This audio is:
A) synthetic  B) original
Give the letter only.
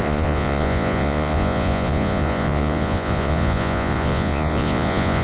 A